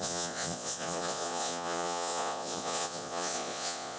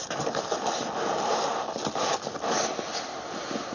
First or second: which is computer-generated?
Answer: first